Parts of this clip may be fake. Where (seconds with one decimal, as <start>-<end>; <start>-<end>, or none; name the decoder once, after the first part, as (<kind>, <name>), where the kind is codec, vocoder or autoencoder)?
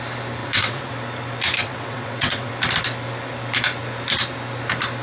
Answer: 0.4-0.9 (vocoder, WaveNeXt); 1.6-2.5